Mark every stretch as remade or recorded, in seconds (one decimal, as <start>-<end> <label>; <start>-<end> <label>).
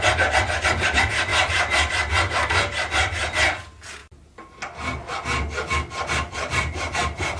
0.0-7.4 recorded